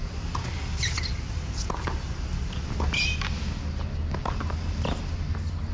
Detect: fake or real real